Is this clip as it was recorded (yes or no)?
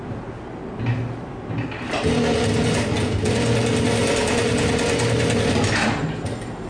yes